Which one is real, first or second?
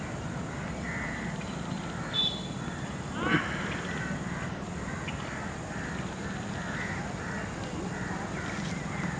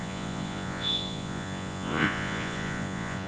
first